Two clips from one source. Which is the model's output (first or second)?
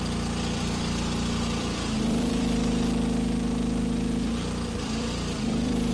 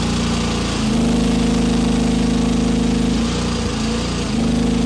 first